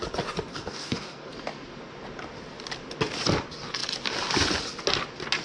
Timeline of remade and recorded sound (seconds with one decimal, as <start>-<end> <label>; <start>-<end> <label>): 0.0-0.5 recorded; 0.5-1.3 remade; 1.3-5.4 recorded

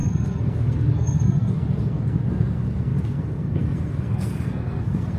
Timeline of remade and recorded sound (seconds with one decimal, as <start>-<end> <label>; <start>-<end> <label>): 0.0-5.2 remade